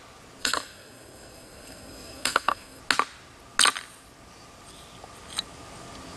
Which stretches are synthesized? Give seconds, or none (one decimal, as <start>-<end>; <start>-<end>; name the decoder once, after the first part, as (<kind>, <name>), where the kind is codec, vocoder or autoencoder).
0.4-2.8 (codec, SNAC)